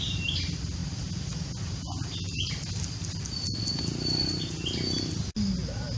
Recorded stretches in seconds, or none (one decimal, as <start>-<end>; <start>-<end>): 0.0-6.0